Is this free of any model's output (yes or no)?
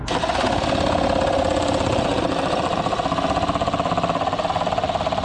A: yes